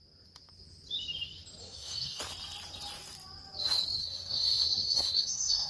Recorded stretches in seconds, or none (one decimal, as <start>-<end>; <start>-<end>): 0.0-1.6; 2.2-4.0